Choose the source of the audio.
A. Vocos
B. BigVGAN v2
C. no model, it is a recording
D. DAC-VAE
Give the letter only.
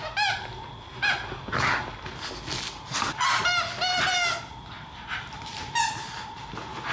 C